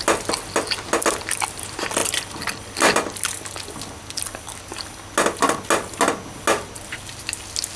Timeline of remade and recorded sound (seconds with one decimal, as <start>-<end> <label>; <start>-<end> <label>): 0.0-7.8 recorded